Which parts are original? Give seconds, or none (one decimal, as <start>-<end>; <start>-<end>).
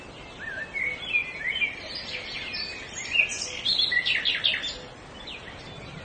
0.0-6.0